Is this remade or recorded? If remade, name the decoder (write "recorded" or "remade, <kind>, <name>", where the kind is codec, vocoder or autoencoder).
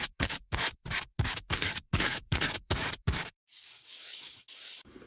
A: remade, codec, DAC